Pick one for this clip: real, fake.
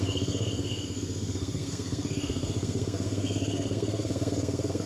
fake